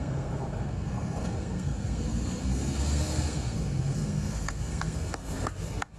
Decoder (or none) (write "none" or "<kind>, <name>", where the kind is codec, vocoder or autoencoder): codec, SNAC